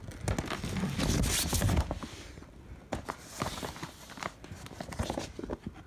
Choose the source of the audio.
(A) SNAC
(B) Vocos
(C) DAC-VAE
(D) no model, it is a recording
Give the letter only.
D